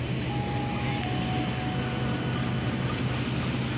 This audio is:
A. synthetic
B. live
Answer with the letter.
B